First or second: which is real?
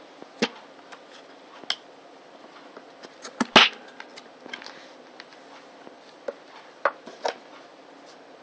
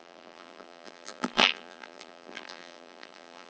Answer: first